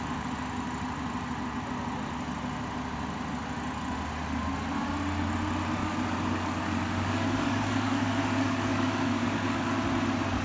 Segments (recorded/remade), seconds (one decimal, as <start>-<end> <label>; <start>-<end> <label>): 0.0-5.8 recorded; 5.8-9.8 remade; 9.8-10.4 recorded